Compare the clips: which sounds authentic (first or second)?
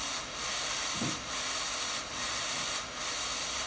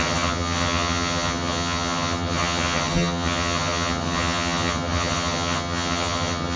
first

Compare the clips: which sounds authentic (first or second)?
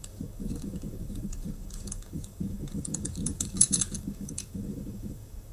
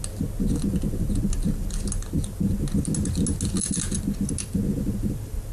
second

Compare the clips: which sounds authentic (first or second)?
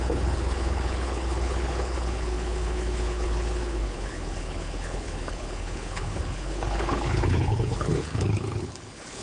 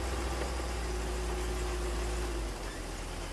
second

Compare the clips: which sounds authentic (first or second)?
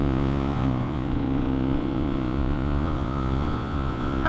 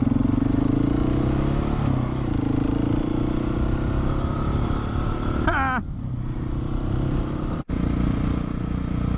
second